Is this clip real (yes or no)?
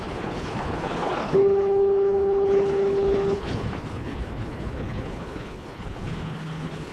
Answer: no